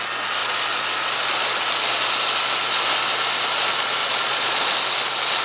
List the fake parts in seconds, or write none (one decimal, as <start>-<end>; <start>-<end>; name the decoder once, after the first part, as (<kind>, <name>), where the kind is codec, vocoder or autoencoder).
4.0-4.7 (vocoder, Vocos)